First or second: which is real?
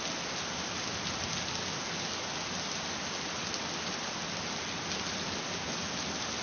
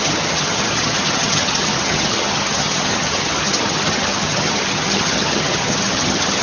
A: first